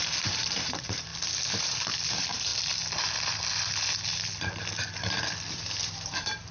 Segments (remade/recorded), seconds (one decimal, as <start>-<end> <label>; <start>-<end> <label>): 0.0-1.1 remade; 1.1-1.6 recorded; 1.6-2.5 remade; 2.5-5.5 recorded; 5.5-6.5 remade